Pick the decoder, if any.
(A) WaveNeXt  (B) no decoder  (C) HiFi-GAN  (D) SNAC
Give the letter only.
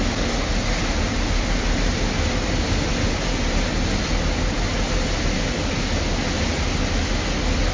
B